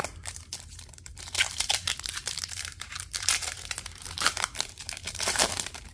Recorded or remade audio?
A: remade